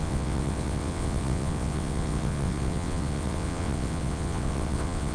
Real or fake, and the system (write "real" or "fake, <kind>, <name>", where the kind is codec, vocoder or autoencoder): fake, vocoder, WaveNeXt